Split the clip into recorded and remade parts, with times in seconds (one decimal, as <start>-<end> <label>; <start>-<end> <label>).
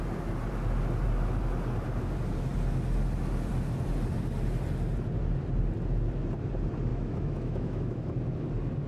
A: 0.0-6.9 recorded; 6.9-8.1 remade; 8.1-8.9 recorded